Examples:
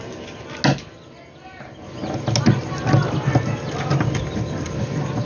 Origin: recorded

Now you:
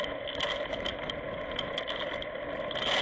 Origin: recorded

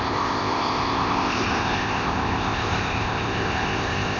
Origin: remade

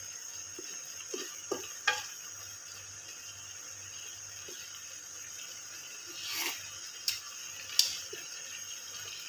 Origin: recorded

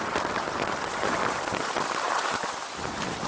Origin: remade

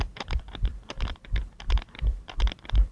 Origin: remade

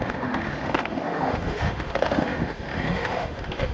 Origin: remade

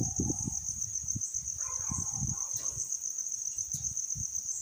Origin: remade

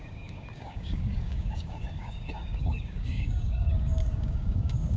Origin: remade